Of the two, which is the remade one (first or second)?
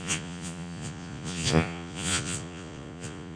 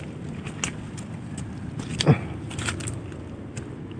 first